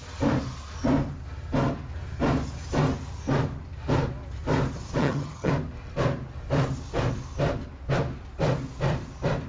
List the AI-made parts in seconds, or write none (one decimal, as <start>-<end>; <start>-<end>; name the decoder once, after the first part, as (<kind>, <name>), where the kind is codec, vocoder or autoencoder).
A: 5.0-5.5 (vocoder, HiFi-GAN)